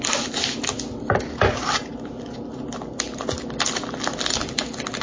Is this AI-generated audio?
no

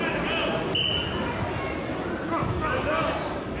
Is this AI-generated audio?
no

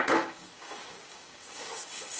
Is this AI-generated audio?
yes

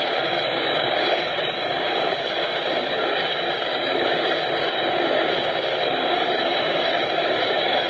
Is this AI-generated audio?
yes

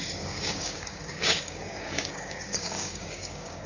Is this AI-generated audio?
yes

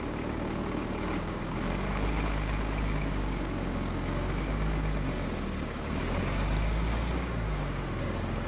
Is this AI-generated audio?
yes